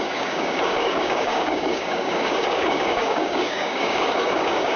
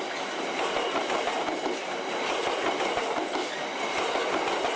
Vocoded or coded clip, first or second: first